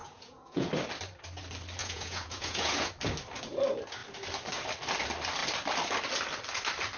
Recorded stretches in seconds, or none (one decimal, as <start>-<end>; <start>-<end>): 0.7-1.8; 2.9-7.0